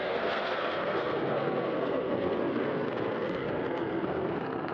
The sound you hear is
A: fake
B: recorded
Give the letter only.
A